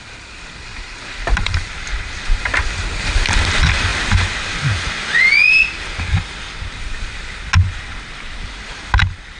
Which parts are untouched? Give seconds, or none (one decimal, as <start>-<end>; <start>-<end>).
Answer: 0.0-0.7; 1.7-9.4